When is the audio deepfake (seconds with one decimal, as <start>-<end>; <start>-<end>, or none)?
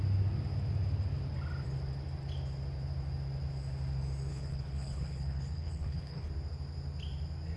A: 4.3-6.3